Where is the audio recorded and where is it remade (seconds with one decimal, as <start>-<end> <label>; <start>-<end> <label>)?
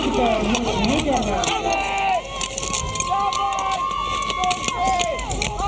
0.0-5.7 recorded